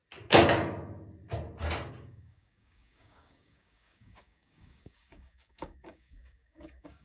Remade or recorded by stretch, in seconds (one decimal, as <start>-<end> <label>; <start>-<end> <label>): 0.0-1.9 recorded; 1.9-7.0 remade